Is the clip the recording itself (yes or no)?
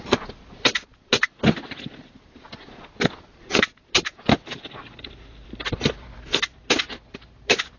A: yes